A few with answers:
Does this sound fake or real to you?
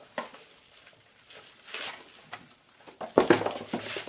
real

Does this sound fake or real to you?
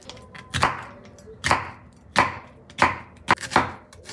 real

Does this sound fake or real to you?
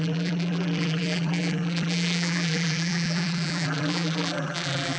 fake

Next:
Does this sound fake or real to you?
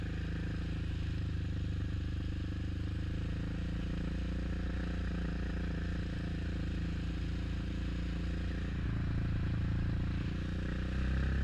real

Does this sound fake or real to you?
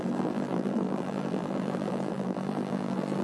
fake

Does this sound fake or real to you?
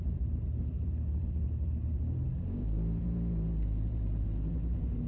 fake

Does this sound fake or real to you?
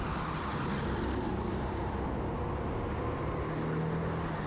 real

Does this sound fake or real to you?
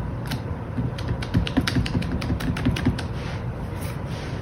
fake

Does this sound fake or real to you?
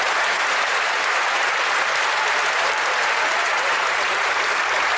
fake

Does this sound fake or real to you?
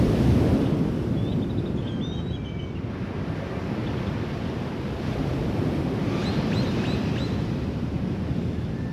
real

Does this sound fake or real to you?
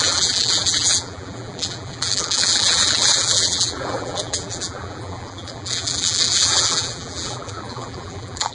fake